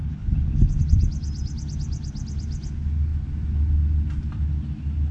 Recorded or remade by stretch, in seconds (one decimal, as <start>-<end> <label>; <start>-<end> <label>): 0.0-0.8 remade; 0.8-5.1 recorded